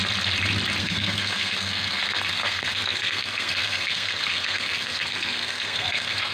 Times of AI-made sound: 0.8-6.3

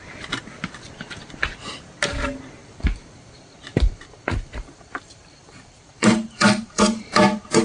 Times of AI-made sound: 2.6-7.6

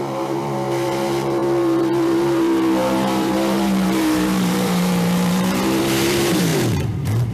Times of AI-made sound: 0.0-7.3

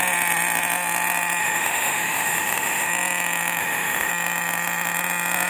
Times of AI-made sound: 1.4-2.9; 3.6-4.1

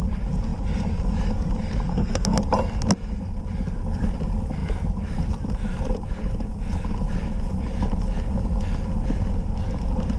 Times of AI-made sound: 1.9-2.4

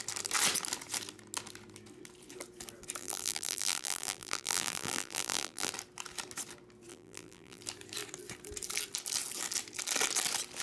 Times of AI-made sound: 3.0-5.7; 6.9-7.6

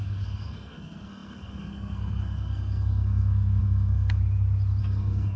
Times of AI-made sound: 0.0-4.2; 4.8-5.4

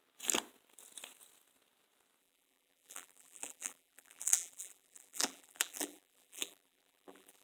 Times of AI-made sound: 2.2-7.4